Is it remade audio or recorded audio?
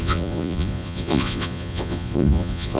remade